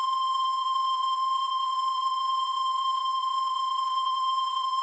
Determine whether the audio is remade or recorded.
remade